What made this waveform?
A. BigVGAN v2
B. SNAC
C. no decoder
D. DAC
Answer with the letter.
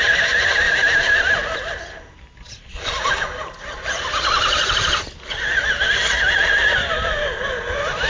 A